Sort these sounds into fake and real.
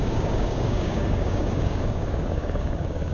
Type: fake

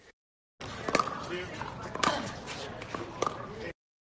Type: real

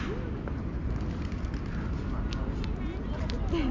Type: real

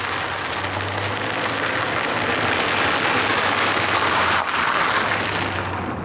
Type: real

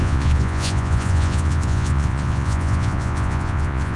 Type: fake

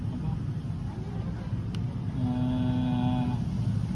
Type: real